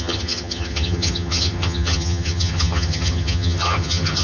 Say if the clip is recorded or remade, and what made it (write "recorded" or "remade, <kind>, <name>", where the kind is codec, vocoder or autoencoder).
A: remade, vocoder, HiFi-GAN